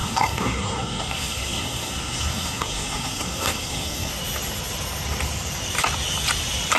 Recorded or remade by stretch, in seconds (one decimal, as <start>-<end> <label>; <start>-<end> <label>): 0.0-4.1 remade; 4.1-6.8 recorded